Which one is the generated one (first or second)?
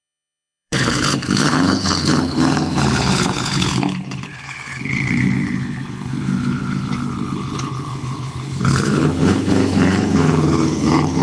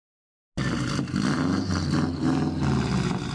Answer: first